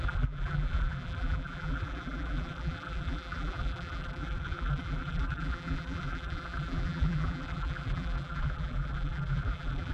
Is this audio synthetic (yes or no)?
yes